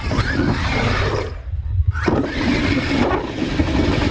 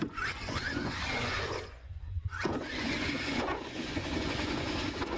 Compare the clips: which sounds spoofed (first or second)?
second